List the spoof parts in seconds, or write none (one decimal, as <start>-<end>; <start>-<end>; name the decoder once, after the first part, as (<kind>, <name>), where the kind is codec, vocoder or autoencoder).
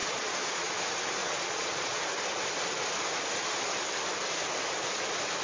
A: 0.0-0.7 (vocoder, Vocos); 1.2-2.0